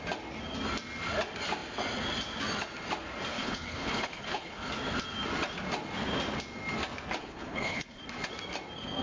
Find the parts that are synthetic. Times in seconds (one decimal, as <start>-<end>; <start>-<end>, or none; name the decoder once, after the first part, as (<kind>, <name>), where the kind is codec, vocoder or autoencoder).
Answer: 3.3-4.7 (codec, HILCodec); 7.2-8.0